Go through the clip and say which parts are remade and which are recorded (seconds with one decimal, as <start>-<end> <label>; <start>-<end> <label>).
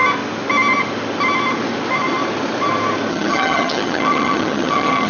0.0-3.1 recorded; 3.1-5.1 remade